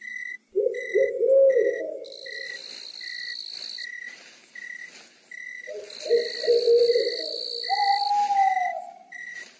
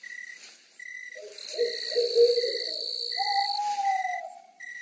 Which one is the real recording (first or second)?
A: first